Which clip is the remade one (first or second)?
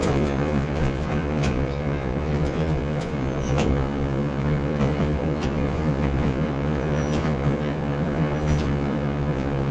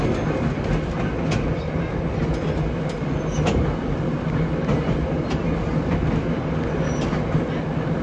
first